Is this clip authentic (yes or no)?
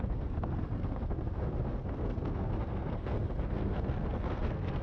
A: no